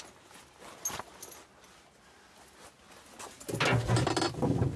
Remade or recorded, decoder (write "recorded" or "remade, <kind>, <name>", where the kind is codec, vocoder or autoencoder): recorded